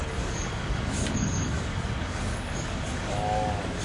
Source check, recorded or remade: remade